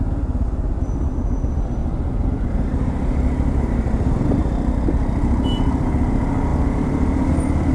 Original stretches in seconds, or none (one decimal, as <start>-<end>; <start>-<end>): 0.0-1.8; 4.4-6.5; 7.3-7.7

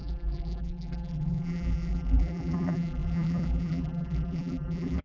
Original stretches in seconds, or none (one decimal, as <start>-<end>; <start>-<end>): none

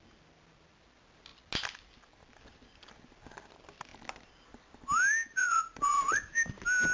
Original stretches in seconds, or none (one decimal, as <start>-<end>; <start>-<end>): 0.0-5.4; 6.3-6.9

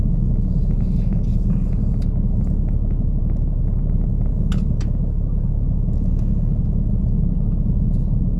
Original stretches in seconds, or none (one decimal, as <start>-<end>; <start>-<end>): 0.0-8.4